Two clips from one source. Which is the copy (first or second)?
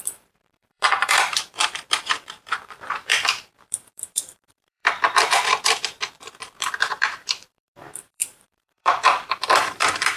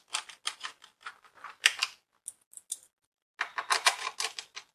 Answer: first